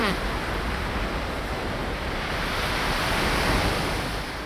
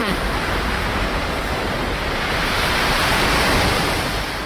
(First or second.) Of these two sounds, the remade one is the second